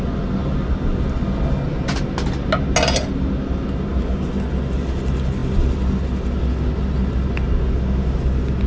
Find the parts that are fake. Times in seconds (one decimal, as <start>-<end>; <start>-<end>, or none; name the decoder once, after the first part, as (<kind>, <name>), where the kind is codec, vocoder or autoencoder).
none